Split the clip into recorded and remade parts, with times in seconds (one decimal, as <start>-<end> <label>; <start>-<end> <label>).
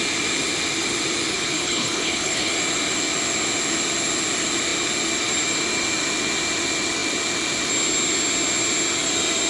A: 0.0-1.3 recorded; 1.3-2.5 remade; 2.5-9.5 recorded